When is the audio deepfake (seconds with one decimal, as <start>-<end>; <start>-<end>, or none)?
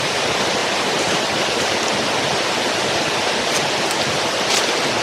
none